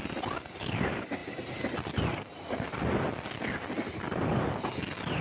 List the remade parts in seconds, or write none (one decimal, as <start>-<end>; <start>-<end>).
none